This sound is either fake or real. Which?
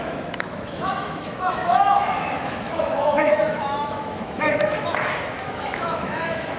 fake